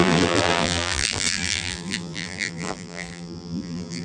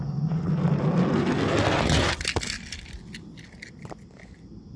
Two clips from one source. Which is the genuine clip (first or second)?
second